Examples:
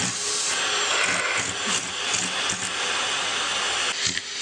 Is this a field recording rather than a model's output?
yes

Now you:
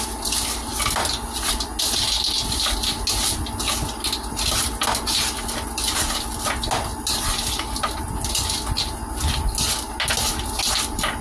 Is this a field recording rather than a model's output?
yes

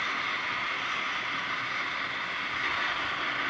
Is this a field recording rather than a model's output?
yes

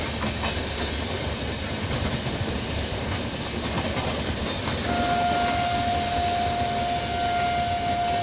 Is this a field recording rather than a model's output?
yes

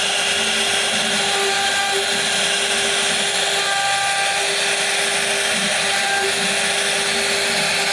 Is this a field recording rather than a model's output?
yes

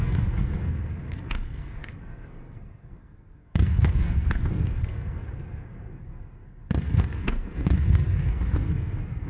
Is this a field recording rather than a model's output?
no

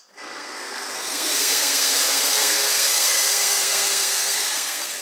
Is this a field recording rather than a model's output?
no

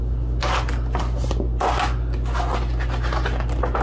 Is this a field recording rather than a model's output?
yes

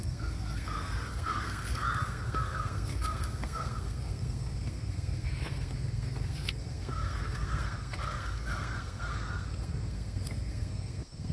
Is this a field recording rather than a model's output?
no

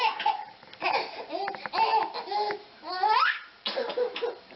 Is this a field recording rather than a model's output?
yes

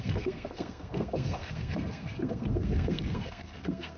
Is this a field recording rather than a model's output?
no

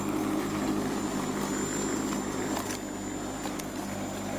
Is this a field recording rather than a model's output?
yes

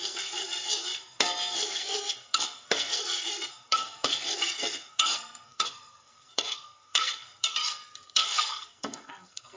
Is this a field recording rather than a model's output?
no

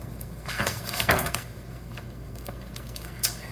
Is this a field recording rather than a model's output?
no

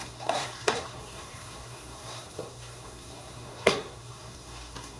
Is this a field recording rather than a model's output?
no